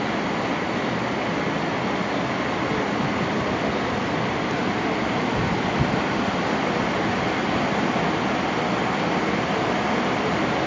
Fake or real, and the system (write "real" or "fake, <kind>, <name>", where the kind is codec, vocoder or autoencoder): real